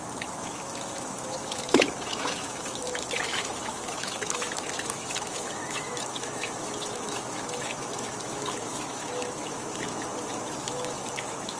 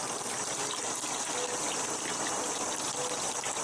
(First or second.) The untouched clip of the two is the second